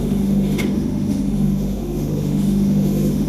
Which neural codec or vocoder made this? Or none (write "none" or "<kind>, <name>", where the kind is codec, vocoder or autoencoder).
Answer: autoencoder, DAC-VAE